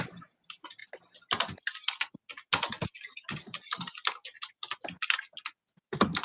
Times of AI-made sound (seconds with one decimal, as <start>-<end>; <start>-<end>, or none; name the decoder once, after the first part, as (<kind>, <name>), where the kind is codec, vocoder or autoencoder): none